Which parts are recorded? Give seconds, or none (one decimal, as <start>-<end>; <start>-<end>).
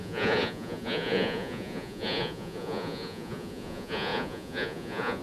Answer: none